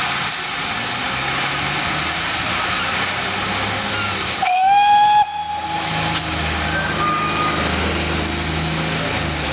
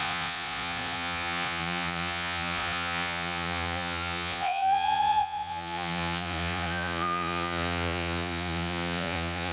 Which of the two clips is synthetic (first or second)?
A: second